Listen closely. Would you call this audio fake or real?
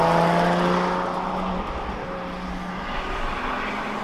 real